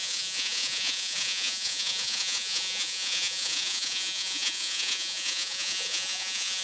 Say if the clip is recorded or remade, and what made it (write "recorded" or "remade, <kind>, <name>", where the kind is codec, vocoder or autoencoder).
remade, vocoder, Vocos